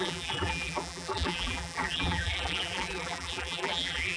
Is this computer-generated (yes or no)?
yes